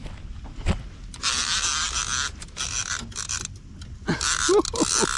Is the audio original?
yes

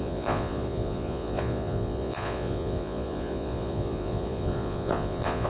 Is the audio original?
no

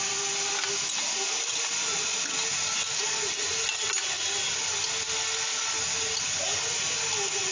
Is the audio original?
yes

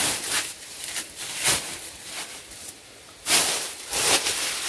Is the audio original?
yes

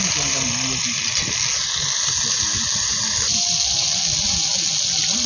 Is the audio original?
yes